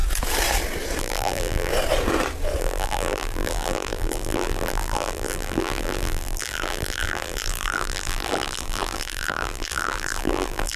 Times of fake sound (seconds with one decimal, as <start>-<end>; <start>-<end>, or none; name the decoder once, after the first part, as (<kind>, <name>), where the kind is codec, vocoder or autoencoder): 1.0-1.7 (vocoder, BigVGAN v2); 2.6-10.8